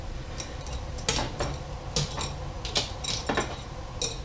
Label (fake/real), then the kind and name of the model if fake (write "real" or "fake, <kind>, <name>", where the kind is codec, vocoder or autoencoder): real